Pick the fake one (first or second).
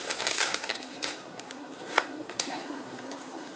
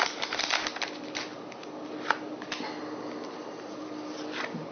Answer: first